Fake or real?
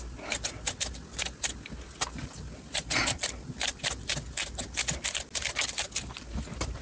real